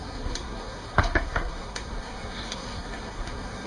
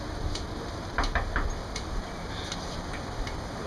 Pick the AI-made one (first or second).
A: first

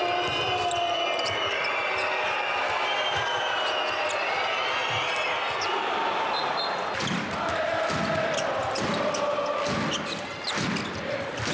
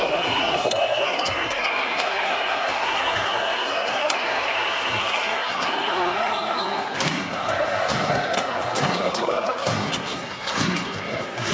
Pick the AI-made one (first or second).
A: second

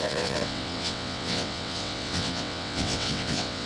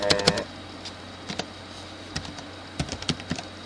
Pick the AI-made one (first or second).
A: first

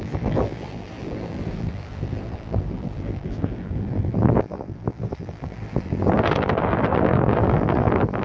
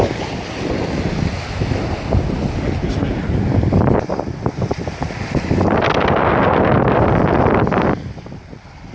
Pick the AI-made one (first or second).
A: first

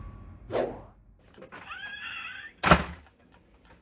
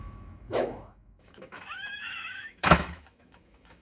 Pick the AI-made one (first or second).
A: second